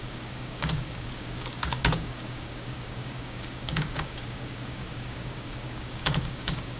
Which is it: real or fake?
fake